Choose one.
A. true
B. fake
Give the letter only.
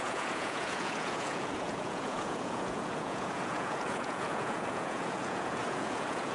B